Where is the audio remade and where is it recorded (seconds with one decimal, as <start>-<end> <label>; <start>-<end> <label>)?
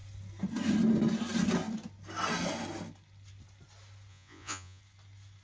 0.0-4.1 recorded; 4.1-4.8 remade; 4.8-5.4 recorded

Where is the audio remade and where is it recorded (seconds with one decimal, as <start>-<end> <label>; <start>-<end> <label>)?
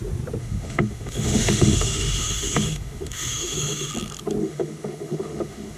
0.0-0.4 recorded; 0.4-3.9 remade; 3.9-4.4 recorded; 4.4-5.8 remade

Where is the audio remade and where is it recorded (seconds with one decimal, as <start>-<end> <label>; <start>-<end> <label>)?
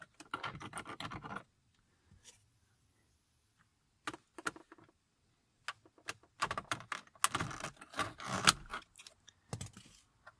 0.0-10.4 recorded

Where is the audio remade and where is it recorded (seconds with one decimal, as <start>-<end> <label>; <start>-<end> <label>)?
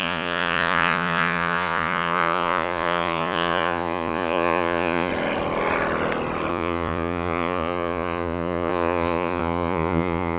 0.0-5.1 remade; 5.1-6.5 recorded; 6.5-10.4 remade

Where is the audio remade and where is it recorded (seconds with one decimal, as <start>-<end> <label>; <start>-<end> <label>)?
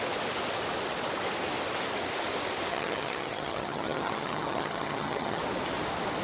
0.0-2.7 recorded; 2.7-5.4 remade; 5.4-6.2 recorded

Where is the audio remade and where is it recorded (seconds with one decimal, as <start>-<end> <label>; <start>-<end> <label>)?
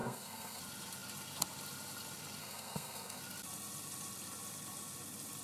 0.0-0.6 remade; 0.6-2.4 recorded; 2.4-3.2 remade; 3.2-5.4 recorded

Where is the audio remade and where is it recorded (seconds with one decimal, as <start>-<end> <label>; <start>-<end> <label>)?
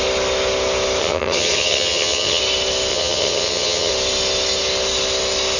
0.0-1.0 recorded; 1.0-2.4 remade; 2.4-2.9 recorded; 2.9-3.9 remade; 3.9-5.6 recorded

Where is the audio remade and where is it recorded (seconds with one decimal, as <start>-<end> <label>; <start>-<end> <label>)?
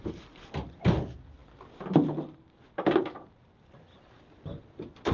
0.0-5.1 recorded